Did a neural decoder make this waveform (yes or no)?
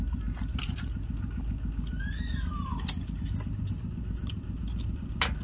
no